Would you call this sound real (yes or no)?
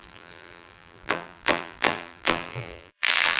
no